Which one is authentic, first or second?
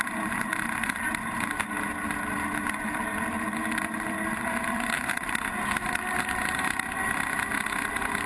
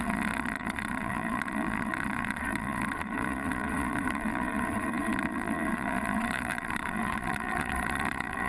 first